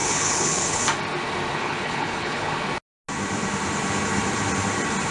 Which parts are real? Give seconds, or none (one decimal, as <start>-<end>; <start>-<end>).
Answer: 0.8-1.5; 2.6-5.1